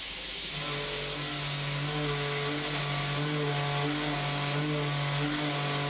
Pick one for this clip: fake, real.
real